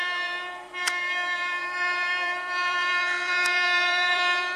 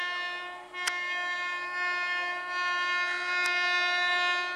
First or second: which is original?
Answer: second